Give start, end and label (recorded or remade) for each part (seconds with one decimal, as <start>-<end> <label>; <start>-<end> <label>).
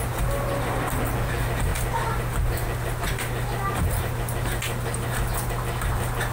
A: 0.0-6.3 recorded